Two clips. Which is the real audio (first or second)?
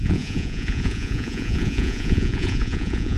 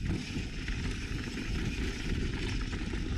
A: second